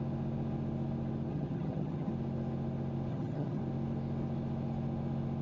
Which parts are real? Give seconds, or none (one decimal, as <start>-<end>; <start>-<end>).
0.0-1.3; 2.1-3.1; 3.6-5.4